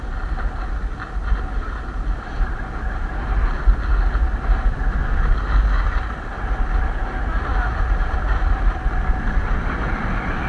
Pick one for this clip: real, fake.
real